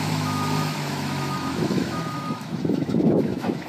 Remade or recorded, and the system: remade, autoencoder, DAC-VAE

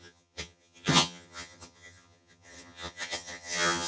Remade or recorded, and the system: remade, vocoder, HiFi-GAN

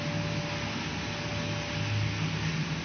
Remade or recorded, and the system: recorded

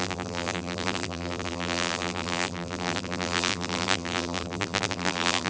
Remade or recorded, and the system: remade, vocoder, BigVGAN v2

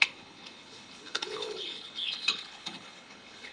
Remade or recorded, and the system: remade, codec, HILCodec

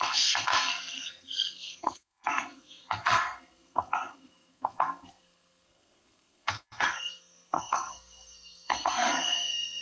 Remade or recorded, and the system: remade, codec, SNAC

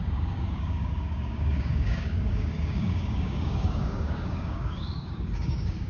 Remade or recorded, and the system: remade, codec, DAC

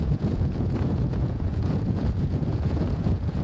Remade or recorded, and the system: remade, vocoder, Vocos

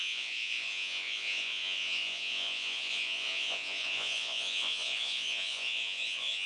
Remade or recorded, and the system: remade, vocoder, Vocos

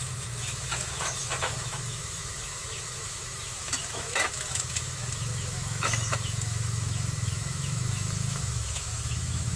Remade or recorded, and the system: remade, autoencoder, DAC-VAE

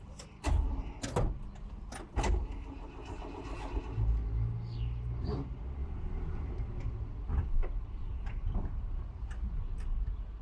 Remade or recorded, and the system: recorded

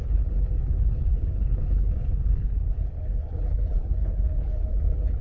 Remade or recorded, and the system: remade, codec, HILCodec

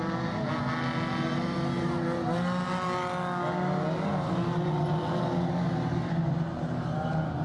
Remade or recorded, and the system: recorded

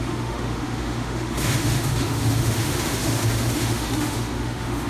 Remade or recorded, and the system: remade, autoencoder, DAC-VAE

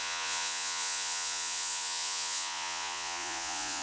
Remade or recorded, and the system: remade, vocoder, Vocos